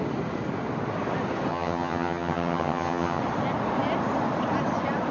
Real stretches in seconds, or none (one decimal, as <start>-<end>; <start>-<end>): 0.0-1.5; 3.2-5.1